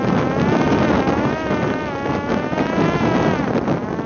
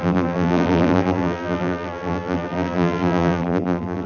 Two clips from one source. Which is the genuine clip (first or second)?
first